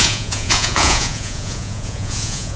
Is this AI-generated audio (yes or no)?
yes